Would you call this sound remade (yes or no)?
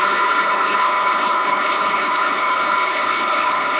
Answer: yes